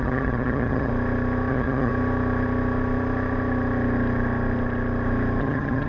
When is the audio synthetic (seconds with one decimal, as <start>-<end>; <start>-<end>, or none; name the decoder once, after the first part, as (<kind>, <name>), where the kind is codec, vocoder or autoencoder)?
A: 0.0-0.9 (vocoder, HiFi-GAN); 1.5-1.9; 5.4-5.9